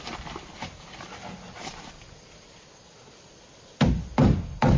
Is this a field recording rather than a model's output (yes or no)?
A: yes